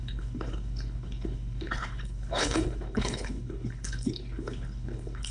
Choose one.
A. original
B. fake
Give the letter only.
B